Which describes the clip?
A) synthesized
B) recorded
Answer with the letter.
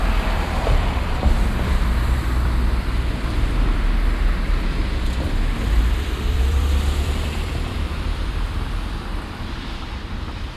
A